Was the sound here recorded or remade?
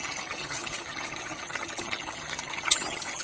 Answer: remade